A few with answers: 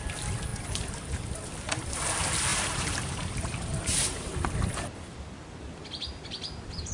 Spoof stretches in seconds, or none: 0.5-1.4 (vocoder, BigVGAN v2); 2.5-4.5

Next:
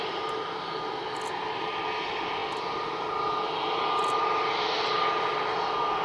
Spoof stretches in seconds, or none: none

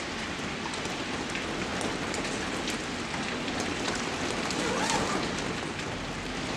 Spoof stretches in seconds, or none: none

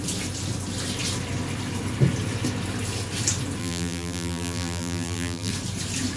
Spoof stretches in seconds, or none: 3.6-5.5 (vocoder, BigVGAN v2)

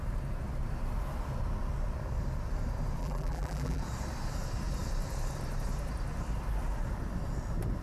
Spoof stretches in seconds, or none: 3.0-3.8 (vocoder, BigVGAN v2)

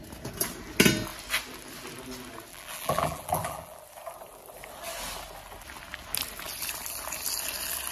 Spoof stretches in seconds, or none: 2.5-3.8 (vocoder, BigVGAN v2)